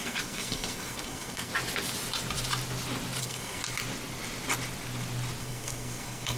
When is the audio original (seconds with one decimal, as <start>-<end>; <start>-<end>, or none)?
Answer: 1.5-3.2; 3.6-5.4